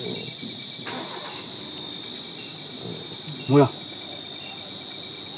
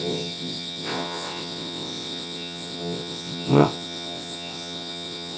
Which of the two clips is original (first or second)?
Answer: first